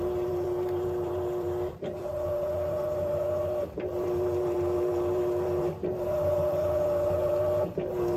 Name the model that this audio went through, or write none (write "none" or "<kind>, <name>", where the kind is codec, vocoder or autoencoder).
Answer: vocoder, BigVGAN v2